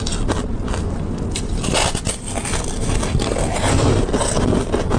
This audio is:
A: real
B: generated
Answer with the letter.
A